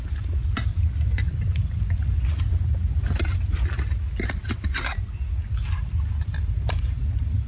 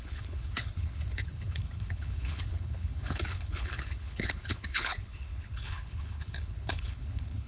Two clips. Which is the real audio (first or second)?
first